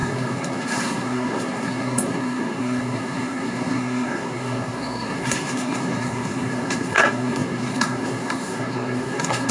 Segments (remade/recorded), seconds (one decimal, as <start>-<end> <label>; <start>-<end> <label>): 0.0-9.5 remade